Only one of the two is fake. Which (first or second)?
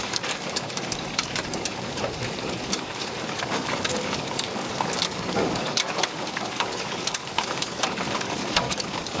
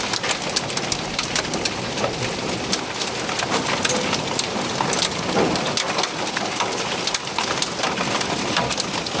first